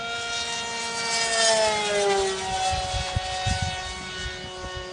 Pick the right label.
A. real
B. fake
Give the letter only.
A